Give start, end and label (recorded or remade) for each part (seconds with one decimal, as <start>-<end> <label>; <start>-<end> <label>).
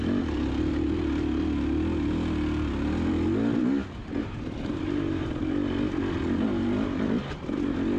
0.0-4.0 recorded; 4.0-5.3 remade; 5.3-8.0 recorded